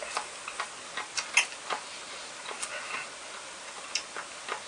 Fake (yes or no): no